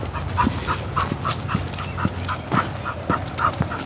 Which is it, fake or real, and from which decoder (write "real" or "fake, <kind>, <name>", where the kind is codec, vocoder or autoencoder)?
real